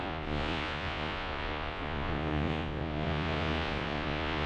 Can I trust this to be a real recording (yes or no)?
no